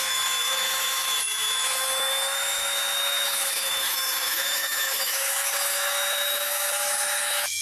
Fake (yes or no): yes